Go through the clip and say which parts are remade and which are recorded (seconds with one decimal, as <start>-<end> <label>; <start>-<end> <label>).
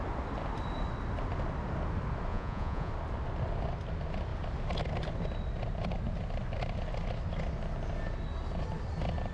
0.0-2.3 recorded; 2.3-2.9 remade; 2.9-9.3 recorded